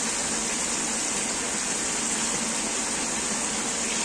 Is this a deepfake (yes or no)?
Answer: no